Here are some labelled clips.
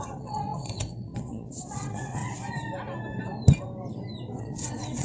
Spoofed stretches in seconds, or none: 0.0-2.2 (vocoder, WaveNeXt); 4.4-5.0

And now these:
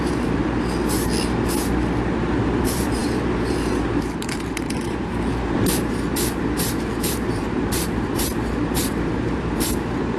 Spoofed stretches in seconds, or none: 0.0-0.4 (vocoder, BigVGAN v2); 2.4-10.2

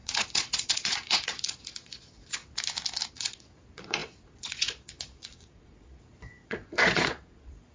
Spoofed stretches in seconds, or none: 0.0-2.4 (vocoder, Vocos); 3.1-7.7

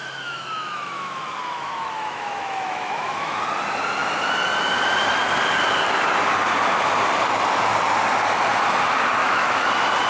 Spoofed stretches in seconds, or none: 0.0-3.4 (autoencoder, DAC-VAE); 9.2-9.7

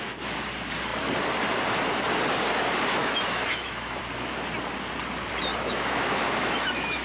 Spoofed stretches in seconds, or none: 3.0-4.0 (autoencoder, DAC-VAE); 5.5-7.0

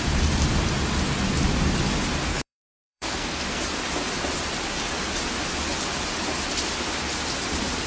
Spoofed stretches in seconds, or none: 2.3-3.6 (codec, SNAC)

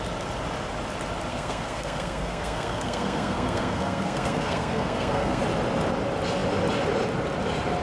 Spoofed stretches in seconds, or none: 1.3-5.4 (codec, SNAC)